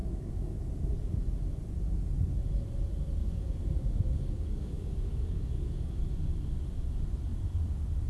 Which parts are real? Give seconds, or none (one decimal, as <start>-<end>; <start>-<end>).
0.6-3.2; 6.0-8.1